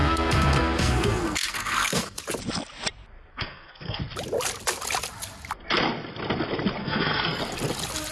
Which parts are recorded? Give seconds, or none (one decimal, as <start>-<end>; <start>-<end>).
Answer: 2.2-3.3; 4.0-6.8; 7.4-8.1